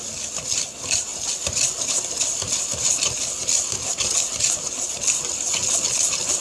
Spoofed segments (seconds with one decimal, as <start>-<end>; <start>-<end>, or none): none